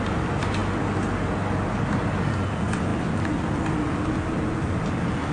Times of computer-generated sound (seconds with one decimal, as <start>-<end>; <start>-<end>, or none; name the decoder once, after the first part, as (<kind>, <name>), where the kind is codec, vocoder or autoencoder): none